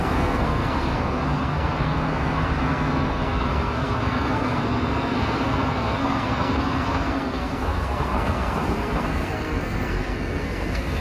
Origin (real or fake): fake